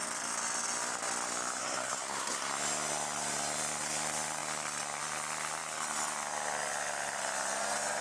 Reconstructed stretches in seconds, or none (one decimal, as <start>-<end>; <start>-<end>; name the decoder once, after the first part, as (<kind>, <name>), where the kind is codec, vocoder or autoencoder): 1.6-2.5 (codec, SNAC)